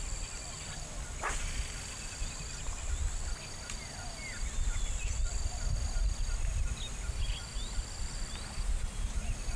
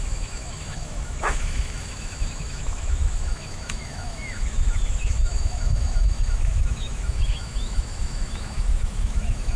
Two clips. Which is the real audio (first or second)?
first